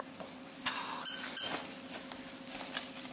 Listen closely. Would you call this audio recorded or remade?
recorded